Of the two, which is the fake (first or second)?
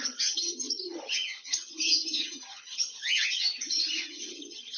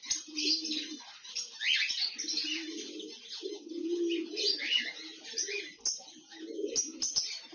first